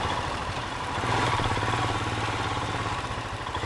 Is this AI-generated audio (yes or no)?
yes